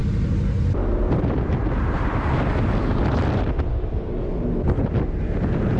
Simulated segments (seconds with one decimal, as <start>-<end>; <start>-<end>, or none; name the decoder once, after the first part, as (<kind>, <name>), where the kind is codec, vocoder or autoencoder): none